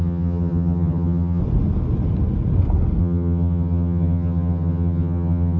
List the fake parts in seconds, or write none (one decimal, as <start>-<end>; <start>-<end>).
0.0-1.4; 3.0-5.6